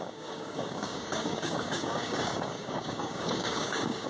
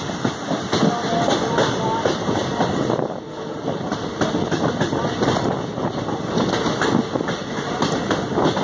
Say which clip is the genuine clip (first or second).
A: second